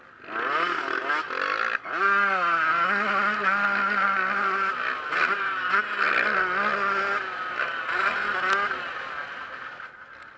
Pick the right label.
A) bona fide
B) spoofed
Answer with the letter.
A